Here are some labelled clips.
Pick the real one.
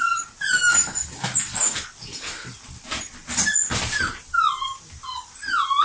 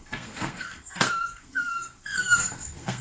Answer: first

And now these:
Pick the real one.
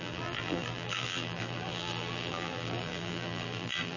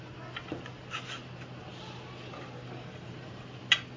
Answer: second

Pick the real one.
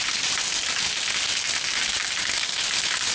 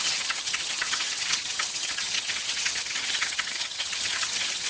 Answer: first